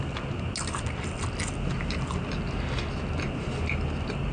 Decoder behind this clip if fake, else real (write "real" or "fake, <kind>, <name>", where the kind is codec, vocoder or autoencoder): real